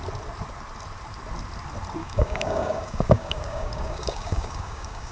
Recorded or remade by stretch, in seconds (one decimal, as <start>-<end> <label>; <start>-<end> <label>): 0.0-2.0 recorded; 2.0-5.1 remade